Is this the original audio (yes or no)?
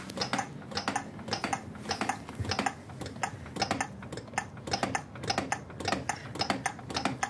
yes